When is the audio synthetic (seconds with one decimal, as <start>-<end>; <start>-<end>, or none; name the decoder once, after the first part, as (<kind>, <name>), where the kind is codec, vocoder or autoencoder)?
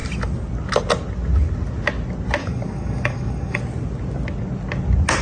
2.4-3.6 (codec, DAC)